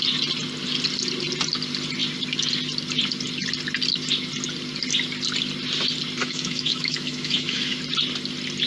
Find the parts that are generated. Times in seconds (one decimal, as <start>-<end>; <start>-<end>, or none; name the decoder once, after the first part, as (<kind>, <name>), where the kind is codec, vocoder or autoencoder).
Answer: 6.2-7.8 (autoencoder, DAC-VAE)